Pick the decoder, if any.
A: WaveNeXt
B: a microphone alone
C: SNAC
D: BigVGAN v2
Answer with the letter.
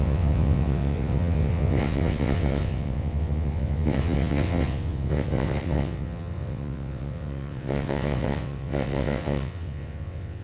A